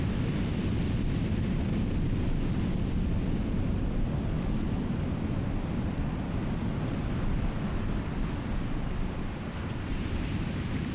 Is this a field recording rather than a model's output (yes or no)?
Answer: yes